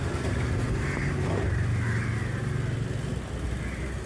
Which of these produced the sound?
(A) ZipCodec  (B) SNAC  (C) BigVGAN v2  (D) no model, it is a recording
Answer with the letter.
D